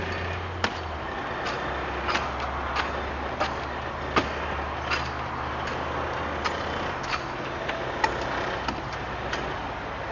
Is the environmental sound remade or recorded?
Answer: recorded